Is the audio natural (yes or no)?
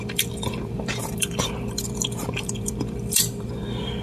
no